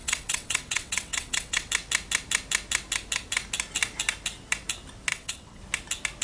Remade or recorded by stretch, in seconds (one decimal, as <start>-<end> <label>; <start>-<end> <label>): 0.0-1.7 remade; 1.7-5.1 recorded; 5.1-5.6 remade; 5.6-6.2 recorded